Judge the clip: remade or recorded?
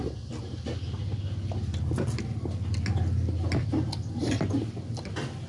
recorded